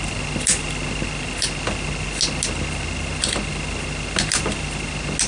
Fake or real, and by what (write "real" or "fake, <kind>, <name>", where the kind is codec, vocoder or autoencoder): real